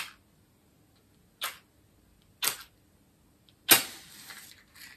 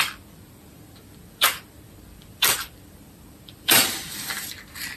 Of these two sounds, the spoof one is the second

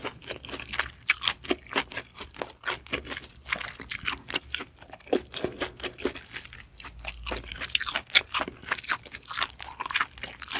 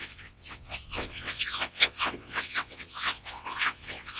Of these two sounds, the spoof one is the second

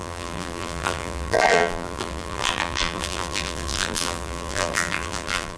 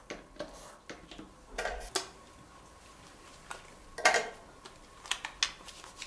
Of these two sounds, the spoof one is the first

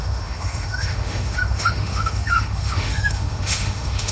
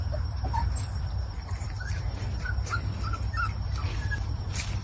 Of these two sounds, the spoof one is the first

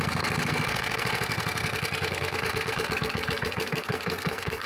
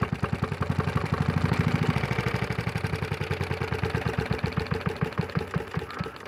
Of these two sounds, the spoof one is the first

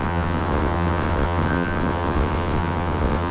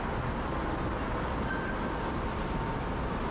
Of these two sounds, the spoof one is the first